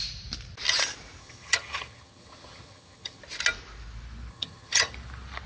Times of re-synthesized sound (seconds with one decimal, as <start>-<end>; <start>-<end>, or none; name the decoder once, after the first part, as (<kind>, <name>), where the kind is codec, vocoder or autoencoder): 1.2-3.2 (vocoder, HiFi-GAN); 4.3-4.9